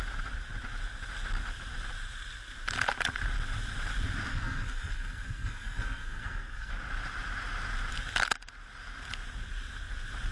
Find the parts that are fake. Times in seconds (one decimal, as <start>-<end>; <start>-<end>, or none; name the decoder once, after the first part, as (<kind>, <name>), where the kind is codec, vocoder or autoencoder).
4.3-6.7 (codec, SNAC)